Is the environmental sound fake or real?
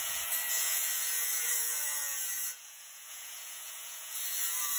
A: fake